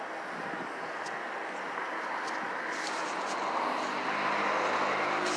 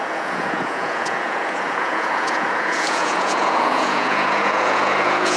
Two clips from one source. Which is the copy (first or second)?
second